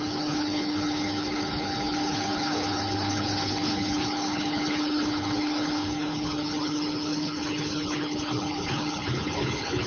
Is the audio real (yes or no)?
no